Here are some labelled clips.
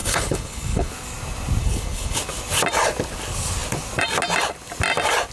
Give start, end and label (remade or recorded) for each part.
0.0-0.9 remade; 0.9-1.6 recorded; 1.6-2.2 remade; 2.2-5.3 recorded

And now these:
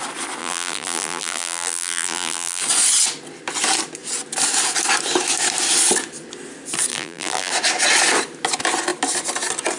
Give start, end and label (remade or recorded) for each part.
0.0-0.4 recorded; 0.4-2.6 remade; 2.6-6.9 recorded; 6.9-7.5 remade; 7.5-9.8 recorded

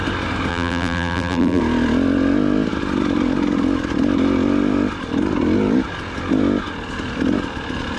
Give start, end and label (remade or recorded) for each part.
0.0-0.5 recorded; 0.5-1.6 remade; 1.6-8.0 recorded

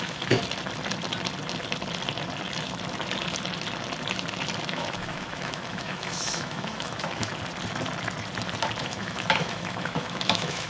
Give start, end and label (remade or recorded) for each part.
0.0-0.4 remade; 0.4-4.7 recorded; 4.7-7.3 remade; 7.3-8.8 recorded; 8.8-10.7 remade

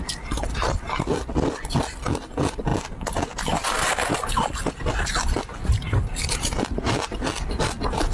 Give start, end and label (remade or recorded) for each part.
0.0-8.1 recorded

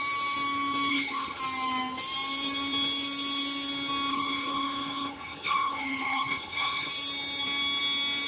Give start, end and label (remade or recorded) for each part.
0.0-0.9 recorded; 0.9-1.4 remade; 1.4-4.1 recorded; 4.1-6.9 remade; 6.9-8.3 recorded

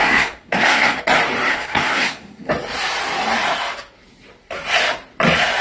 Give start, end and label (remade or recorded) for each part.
0.0-1.0 remade; 1.0-1.5 recorded; 1.5-2.5 remade; 2.5-5.6 recorded

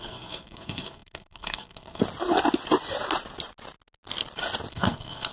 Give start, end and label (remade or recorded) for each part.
0.0-2.0 remade; 2.0-4.7 recorded; 4.7-5.3 remade